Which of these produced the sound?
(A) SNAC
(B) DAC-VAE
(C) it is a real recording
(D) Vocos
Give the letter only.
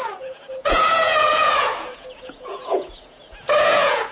D